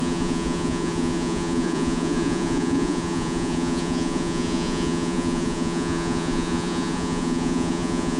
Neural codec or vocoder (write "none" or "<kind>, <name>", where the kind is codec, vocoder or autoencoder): vocoder, Vocos